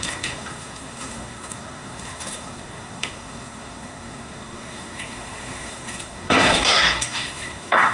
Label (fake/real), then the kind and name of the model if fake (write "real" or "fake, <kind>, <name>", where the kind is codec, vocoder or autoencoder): fake, codec, SNAC